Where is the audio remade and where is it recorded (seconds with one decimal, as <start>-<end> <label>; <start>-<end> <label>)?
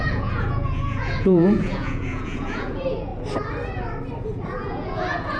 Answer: 0.0-3.1 remade; 3.1-4.2 recorded; 4.2-5.4 remade